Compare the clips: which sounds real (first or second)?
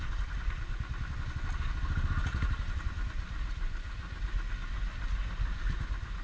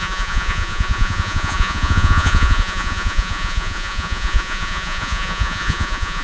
first